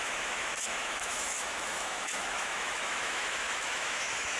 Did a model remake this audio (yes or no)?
yes